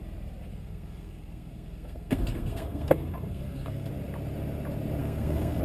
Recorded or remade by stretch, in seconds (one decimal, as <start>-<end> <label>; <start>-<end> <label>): 0.0-0.5 recorded; 0.5-3.9 remade; 3.9-5.0 recorded; 5.0-5.6 remade

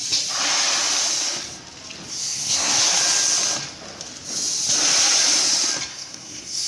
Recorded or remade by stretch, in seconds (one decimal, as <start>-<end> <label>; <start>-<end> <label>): 0.0-2.1 recorded; 2.1-2.7 remade; 2.7-5.9 recorded; 5.9-6.7 remade

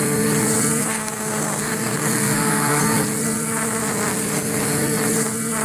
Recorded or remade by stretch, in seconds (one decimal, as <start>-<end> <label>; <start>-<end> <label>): 0.0-0.8 recorded; 0.8-2.8 remade; 2.8-5.6 recorded

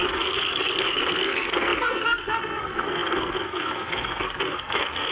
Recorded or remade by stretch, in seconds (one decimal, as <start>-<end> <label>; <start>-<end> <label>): 0.0-5.1 remade

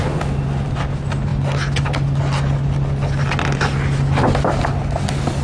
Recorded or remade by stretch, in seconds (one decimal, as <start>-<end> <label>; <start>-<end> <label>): 0.0-5.4 recorded

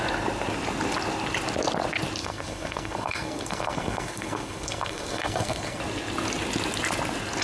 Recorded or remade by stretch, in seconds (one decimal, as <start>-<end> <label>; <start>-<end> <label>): 0.0-2.2 recorded; 2.2-5.8 remade; 5.8-7.4 recorded

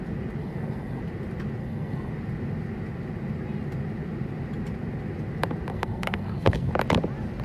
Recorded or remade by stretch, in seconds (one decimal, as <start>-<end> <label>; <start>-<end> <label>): 0.0-0.4 recorded; 0.4-1.0 remade; 1.0-1.6 recorded; 1.6-2.1 remade; 2.1-5.7 recorded; 5.7-6.7 remade; 6.7-7.4 recorded